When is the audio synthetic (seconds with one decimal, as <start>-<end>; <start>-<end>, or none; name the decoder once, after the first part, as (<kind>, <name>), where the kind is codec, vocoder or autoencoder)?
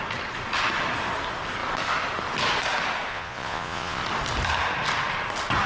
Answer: 3.1-4.0 (vocoder, Vocos)